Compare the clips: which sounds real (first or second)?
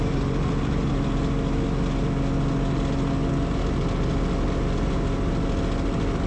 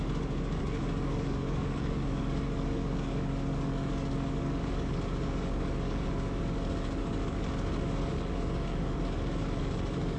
first